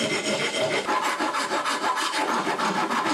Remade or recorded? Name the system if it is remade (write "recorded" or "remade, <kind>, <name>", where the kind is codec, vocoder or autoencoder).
remade, vocoder, BigVGAN v2